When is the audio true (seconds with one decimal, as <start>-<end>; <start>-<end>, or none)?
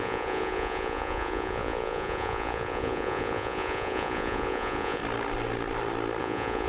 5.0-6.2